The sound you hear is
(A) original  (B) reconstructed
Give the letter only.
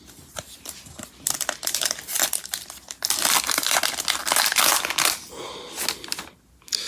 A